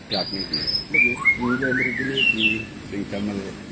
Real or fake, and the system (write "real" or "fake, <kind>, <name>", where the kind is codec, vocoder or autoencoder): real